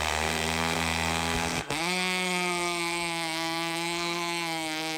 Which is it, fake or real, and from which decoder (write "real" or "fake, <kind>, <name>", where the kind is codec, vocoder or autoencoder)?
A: fake, codec, SNAC